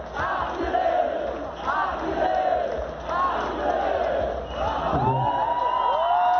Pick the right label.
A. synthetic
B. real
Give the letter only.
B